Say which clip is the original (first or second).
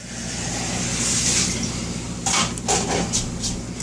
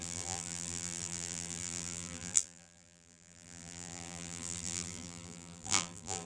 first